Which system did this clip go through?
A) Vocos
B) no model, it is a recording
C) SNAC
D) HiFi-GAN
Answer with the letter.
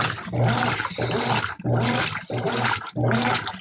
B